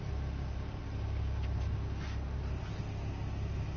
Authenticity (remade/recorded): recorded